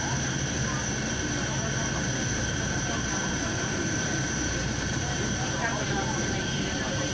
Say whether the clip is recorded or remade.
remade